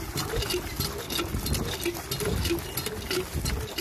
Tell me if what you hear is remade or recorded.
recorded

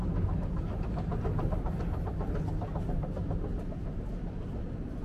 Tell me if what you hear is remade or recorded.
recorded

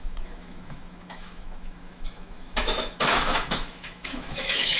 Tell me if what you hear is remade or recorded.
remade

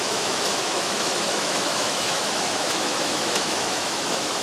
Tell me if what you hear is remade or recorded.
remade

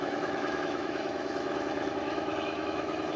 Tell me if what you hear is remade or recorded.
remade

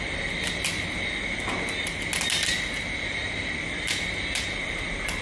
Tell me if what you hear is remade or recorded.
recorded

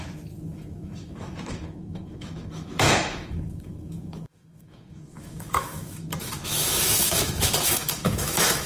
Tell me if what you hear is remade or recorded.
remade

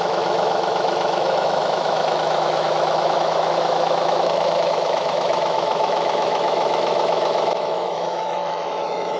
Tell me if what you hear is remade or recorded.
remade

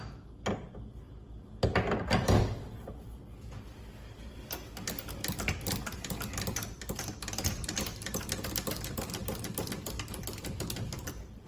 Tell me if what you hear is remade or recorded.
recorded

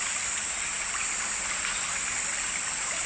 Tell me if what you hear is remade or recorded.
recorded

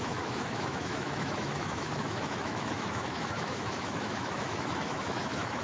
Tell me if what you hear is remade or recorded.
remade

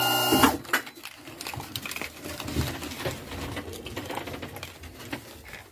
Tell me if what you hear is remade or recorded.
recorded